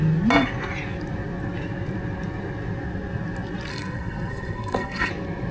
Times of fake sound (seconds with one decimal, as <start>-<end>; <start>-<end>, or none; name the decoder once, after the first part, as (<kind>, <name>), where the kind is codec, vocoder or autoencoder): 3.7-5.1 (codec, SNAC)